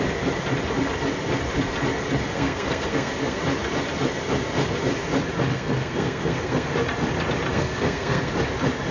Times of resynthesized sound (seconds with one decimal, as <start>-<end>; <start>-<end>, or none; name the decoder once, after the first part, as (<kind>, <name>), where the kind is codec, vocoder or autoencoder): 2.2-3.4 (codec, SNAC); 5.5-6.7; 7.5-8.3